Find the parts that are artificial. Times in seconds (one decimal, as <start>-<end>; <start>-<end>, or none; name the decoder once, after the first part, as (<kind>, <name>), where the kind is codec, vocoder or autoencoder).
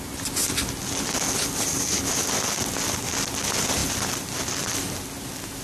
none